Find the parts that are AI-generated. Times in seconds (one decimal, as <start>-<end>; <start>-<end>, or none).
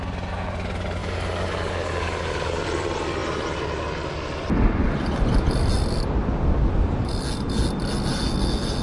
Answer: 1.0-2.6